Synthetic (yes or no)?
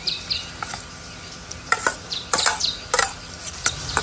no